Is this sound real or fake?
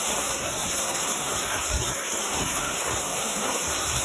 fake